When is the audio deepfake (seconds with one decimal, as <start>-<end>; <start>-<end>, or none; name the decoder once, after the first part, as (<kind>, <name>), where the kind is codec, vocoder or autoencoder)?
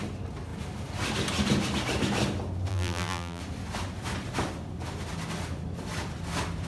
2.7-3.4 (vocoder, BigVGAN v2)